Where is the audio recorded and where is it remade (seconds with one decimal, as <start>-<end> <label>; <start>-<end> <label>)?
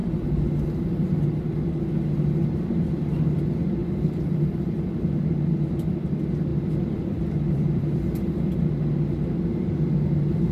0.0-3.8 recorded; 3.8-5.0 remade; 5.0-6.5 recorded; 6.5-8.8 remade; 8.8-10.5 recorded